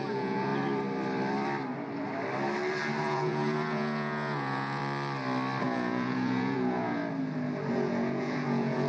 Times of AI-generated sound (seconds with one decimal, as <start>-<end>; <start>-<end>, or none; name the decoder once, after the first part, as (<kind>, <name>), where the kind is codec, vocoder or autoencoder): 0.0-0.5 (vocoder, Vocos); 3.0-4.8; 5.6-7.0; 7.7-8.9